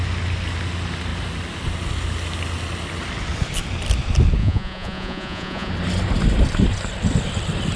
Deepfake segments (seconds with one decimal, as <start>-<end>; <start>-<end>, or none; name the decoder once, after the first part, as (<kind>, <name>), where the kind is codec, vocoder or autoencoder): 4.4-5.7 (vocoder, Vocos)